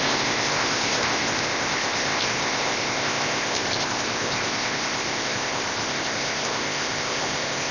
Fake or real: fake